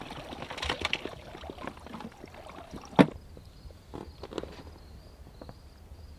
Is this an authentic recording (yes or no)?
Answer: yes